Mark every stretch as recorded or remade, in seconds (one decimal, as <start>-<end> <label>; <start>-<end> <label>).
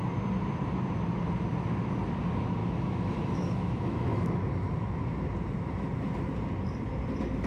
0.0-2.6 recorded; 2.6-4.5 remade; 4.5-7.5 recorded